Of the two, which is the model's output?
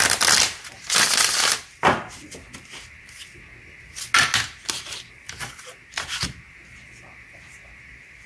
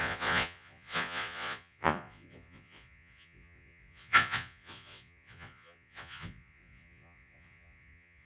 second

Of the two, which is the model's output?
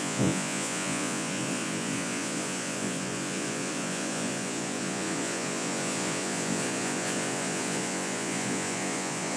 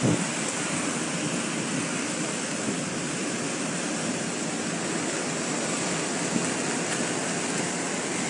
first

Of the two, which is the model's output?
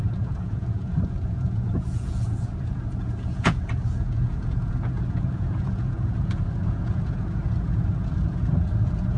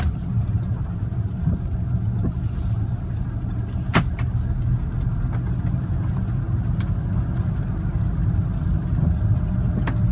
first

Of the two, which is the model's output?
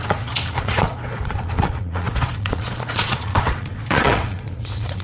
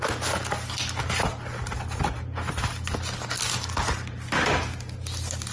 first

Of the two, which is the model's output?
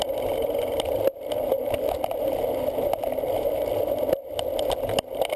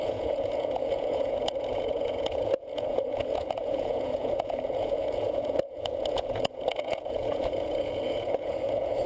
second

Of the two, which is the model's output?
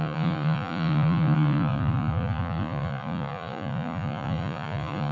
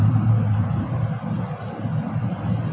first